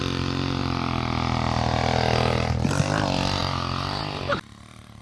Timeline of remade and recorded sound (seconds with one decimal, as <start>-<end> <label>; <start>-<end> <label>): 0.0-5.0 recorded